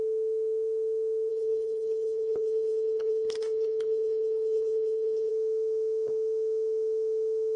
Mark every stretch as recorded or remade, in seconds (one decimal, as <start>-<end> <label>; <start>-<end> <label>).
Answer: 0.0-1.3 recorded; 1.3-5.3 remade; 5.3-7.6 recorded